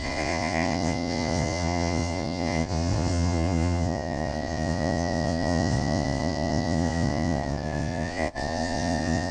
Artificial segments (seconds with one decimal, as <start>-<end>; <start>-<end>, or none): 0.0-9.3